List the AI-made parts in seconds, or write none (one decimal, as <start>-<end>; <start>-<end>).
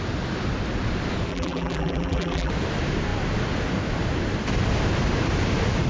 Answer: 1.3-2.5